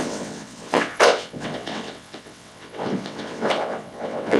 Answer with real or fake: fake